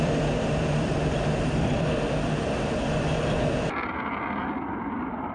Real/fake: fake